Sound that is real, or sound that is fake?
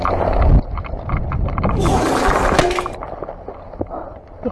real